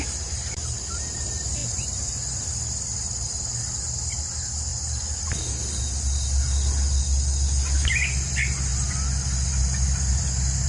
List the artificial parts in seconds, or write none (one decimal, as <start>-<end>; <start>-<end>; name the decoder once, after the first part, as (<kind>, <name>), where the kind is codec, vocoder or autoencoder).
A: 1.6-2.4 (vocoder, Vocos)